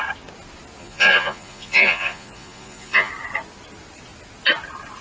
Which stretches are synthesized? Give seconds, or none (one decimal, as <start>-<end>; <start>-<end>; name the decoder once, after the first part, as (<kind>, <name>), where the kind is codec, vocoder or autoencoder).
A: 0.8-3.1 (vocoder, Vocos)